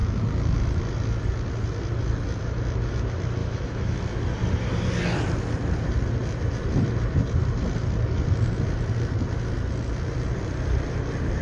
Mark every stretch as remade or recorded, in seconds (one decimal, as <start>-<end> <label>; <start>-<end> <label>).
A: 0.0-3.4 recorded; 3.4-4.0 remade; 4.0-11.4 recorded